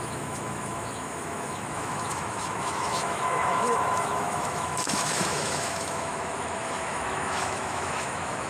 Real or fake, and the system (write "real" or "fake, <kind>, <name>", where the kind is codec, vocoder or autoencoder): fake, autoencoder, DAC-VAE